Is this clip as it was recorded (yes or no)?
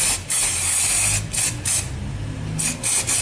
yes